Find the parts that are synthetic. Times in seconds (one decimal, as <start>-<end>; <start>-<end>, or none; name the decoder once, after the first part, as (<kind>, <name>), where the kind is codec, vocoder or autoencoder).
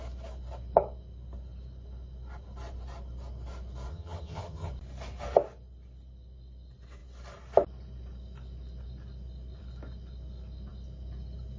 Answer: 3.9-4.7 (vocoder, HiFi-GAN)